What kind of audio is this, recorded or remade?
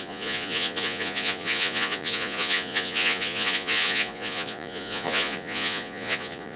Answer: remade